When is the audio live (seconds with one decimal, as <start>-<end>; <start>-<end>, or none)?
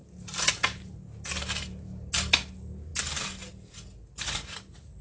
0.0-5.0